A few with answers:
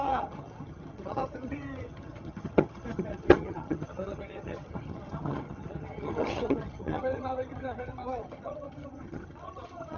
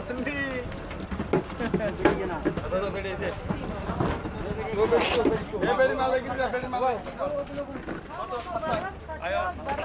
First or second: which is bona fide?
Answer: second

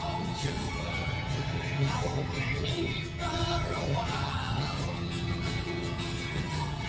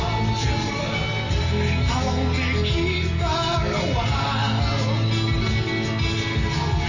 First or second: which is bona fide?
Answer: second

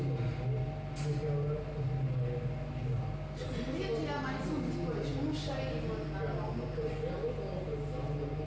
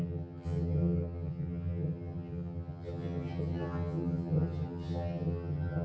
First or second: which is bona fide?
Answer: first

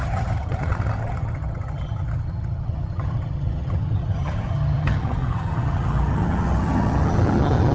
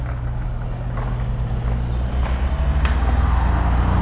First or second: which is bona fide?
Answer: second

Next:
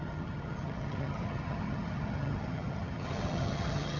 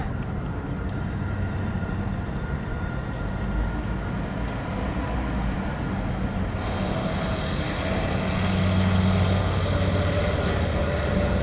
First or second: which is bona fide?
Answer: second